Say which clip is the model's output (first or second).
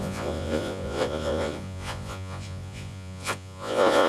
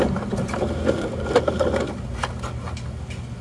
first